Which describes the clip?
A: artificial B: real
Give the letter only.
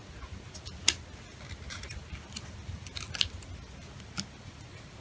B